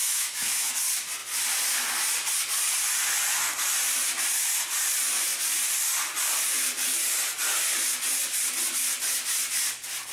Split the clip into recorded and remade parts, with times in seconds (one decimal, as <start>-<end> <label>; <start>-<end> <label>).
0.0-0.7 remade; 0.7-10.1 recorded